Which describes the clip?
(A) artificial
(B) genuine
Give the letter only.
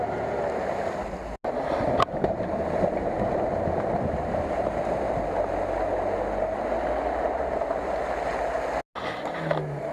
B